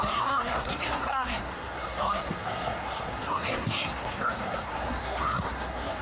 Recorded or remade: remade